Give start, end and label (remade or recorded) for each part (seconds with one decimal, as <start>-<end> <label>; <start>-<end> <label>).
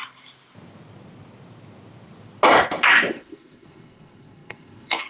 0.0-3.1 recorded; 3.1-5.1 remade